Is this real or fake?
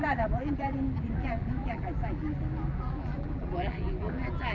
fake